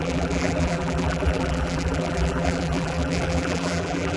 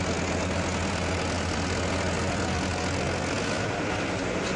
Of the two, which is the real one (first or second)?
second